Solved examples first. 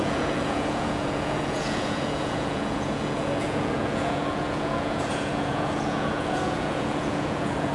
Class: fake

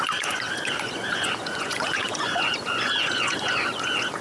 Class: fake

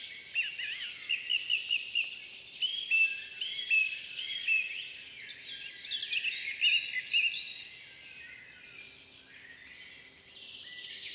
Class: real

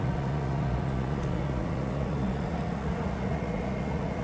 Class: fake